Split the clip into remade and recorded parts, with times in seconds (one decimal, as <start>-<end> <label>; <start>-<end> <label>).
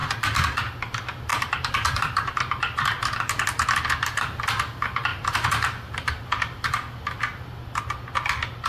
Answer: 0.0-0.6 remade; 0.6-1.3 recorded; 1.3-2.6 remade; 2.6-5.1 recorded; 5.1-6.2 remade; 6.2-8.7 recorded